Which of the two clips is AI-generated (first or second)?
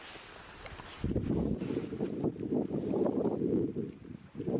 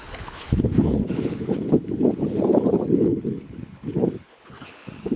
second